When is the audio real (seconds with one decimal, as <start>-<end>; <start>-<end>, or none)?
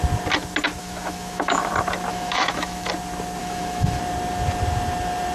0.0-0.8; 1.7-2.1; 2.9-3.4; 4.0-5.3